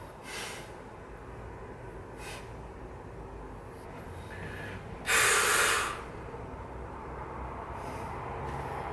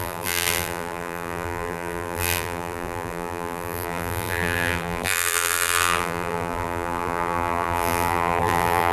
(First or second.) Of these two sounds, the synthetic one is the second